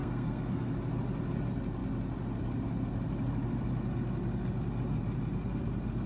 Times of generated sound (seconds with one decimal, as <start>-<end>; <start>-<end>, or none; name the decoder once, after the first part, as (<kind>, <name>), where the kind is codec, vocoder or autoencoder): 0.0-0.7 (codec, SNAC)